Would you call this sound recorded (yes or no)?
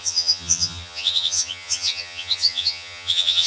no